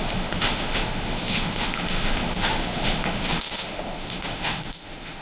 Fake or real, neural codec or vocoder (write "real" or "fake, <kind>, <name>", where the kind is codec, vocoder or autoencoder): fake, autoencoder, DAC-VAE